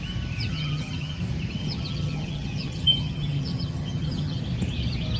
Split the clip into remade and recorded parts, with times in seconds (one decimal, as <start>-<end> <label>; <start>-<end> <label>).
0.0-0.5 recorded; 0.5-1.2 remade; 1.2-1.6 recorded; 1.6-4.4 remade; 4.4-5.2 recorded